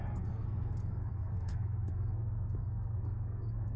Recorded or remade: remade